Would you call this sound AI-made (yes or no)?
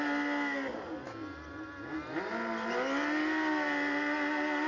no